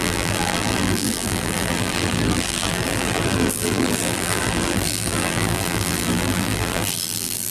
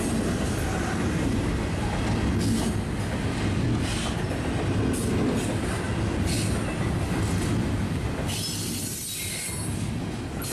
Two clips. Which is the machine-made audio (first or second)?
first